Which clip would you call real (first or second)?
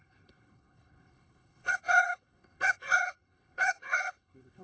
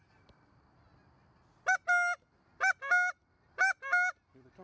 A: second